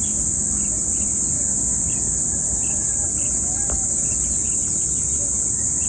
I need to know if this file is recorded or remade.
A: recorded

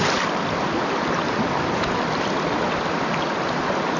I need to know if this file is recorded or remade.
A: remade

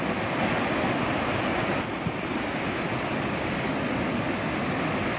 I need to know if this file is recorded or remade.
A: recorded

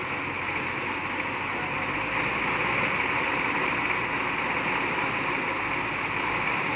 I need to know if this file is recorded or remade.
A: recorded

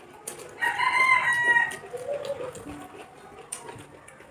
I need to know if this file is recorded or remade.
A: recorded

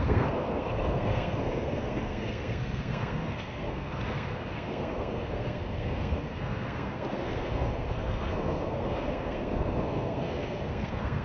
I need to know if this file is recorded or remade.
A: remade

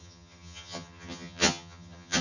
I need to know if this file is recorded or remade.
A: remade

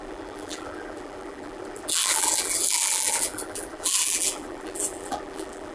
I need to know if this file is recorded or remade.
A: remade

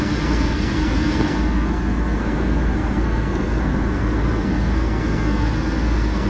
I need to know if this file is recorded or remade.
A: remade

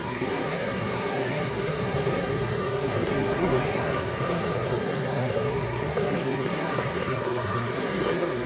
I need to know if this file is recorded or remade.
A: remade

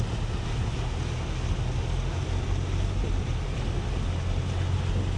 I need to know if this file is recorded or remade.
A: recorded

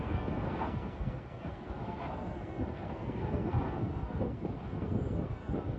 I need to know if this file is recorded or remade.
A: remade